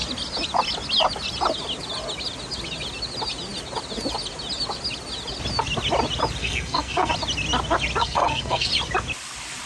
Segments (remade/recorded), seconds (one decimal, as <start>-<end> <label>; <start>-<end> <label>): 0.0-6.4 recorded; 6.4-7.1 remade; 7.1-8.0 recorded; 8.0-8.7 remade; 8.7-9.7 recorded